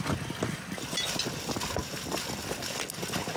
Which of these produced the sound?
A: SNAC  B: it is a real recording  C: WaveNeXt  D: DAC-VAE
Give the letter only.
B